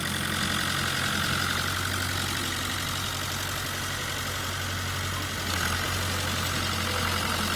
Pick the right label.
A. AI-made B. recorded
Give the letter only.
B